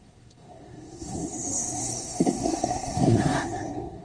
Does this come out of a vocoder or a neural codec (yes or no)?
yes